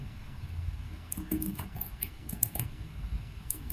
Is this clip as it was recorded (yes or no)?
no